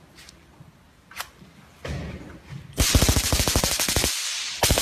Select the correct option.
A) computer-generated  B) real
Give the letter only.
B